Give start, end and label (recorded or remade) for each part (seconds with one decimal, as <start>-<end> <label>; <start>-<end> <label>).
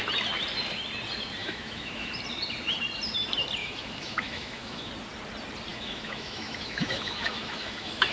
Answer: 0.0-1.4 recorded; 1.4-2.1 remade; 2.1-3.6 recorded; 3.6-4.9 remade; 4.9-5.7 recorded; 5.7-8.1 remade